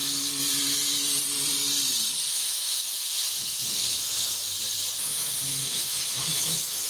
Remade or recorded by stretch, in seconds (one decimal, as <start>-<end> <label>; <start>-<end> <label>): 0.0-2.3 recorded; 2.3-4.5 remade; 4.5-5.0 recorded; 5.0-6.9 remade